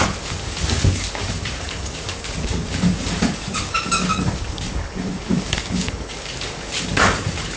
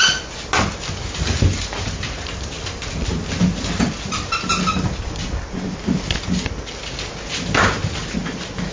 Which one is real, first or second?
second